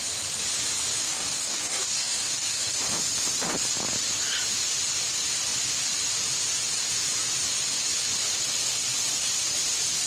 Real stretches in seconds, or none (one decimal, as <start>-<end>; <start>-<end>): 0.0-1.0; 2.7-10.1